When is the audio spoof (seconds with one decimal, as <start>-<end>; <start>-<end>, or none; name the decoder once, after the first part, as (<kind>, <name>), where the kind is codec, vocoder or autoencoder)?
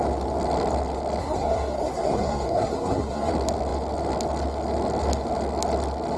1.2-3.3 (codec, SNAC)